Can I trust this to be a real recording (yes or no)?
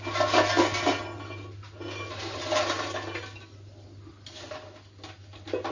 yes